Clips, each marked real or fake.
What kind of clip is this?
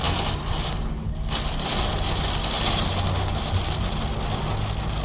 real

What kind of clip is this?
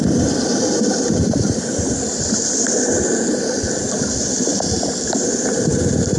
real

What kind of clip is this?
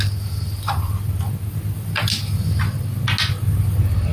real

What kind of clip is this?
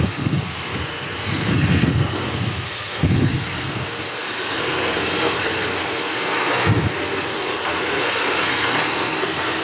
fake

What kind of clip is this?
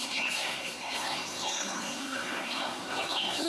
fake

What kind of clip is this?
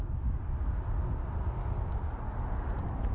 real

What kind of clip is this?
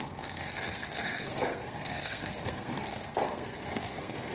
fake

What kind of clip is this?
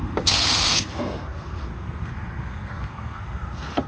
fake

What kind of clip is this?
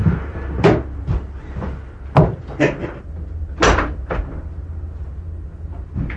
real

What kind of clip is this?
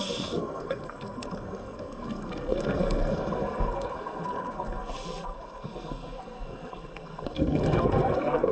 fake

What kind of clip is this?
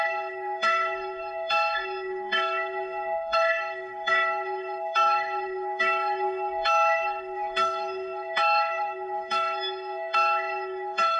fake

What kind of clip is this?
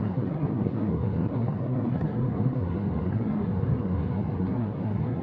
fake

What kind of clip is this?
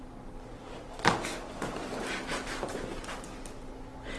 real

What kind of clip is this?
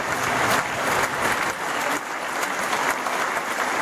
real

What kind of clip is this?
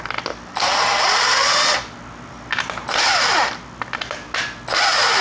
real